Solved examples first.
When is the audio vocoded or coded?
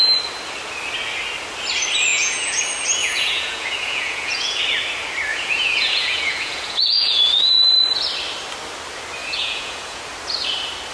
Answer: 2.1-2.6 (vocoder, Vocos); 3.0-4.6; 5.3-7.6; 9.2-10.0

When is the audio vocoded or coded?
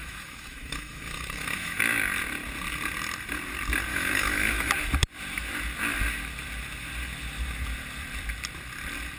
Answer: 0.0-1.8 (autoencoder, DAC-VAE); 3.9-4.7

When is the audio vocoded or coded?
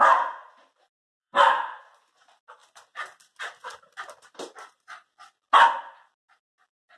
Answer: 1.2-1.8 (vocoder, BigVGAN v2)